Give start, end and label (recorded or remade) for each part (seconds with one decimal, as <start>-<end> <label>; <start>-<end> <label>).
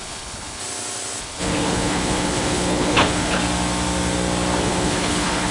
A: 0.0-0.6 remade; 0.6-1.2 recorded; 1.2-3.4 remade; 3.4-4.6 recorded; 4.6-5.5 remade